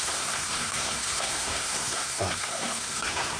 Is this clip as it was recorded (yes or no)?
no